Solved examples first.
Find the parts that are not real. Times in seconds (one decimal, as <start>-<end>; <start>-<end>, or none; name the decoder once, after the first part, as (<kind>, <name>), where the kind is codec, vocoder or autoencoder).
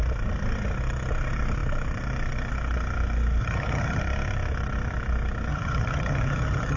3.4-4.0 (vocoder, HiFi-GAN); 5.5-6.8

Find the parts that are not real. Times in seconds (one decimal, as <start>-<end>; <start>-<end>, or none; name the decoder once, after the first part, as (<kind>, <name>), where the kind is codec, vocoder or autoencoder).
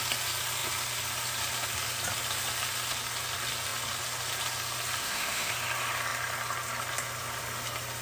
5.0-5.5 (autoencoder, DAC-VAE)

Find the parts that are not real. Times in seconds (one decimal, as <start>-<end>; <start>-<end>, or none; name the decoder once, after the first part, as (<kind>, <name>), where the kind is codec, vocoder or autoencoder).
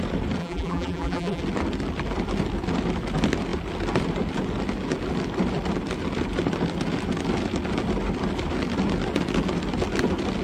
0.4-1.4 (vocoder, BigVGAN v2)